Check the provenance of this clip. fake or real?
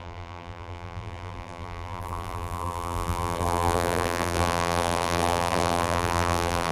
fake